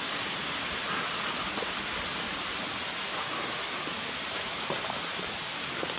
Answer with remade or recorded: recorded